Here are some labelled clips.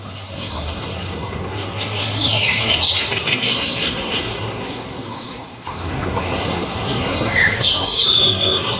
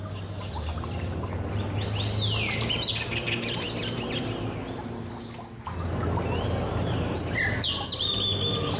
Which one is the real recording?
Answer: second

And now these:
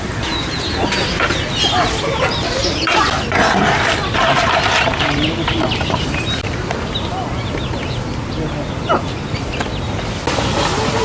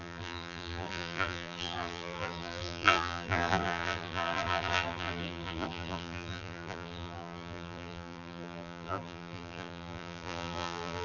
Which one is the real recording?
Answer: first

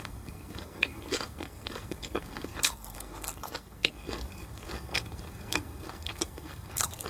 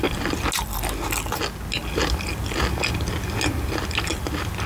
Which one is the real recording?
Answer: second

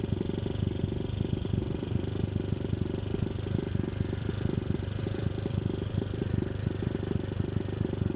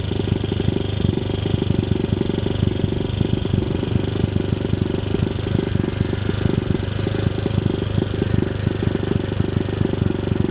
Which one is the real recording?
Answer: second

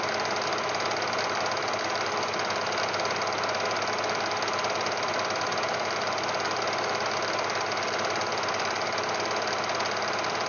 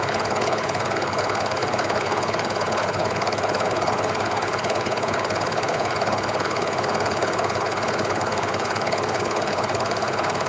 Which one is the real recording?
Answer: first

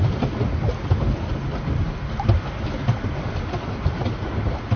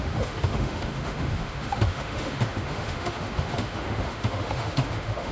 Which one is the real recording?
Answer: first